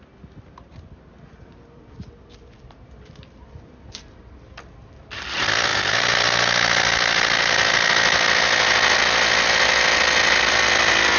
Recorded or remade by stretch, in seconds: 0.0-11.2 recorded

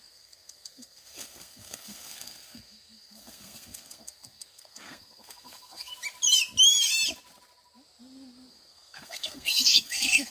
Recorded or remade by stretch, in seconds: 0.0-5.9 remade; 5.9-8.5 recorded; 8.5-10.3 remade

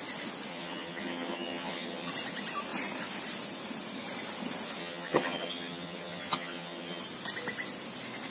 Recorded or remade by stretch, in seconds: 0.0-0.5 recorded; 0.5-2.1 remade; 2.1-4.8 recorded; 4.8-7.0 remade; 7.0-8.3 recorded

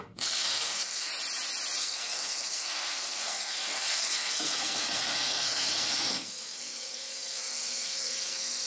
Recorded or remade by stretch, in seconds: 0.0-1.1 remade; 1.1-1.8 recorded; 1.8-8.7 remade

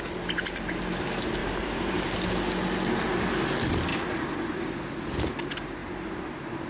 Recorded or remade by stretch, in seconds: 0.0-1.4 recorded; 1.4-2.0 remade; 2.0-6.7 recorded

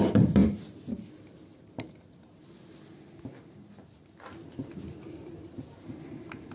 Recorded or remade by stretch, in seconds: 0.0-6.5 recorded

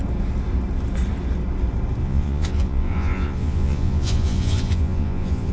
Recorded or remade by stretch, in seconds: 0.0-2.0 recorded; 2.0-5.5 remade